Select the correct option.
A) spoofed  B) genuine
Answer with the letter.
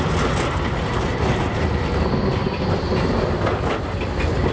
B